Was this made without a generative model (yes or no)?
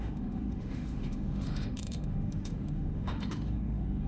no